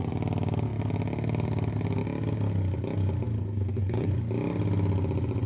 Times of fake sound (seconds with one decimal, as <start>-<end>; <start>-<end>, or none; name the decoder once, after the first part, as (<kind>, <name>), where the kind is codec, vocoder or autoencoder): 3.4-4.1 (codec, SNAC)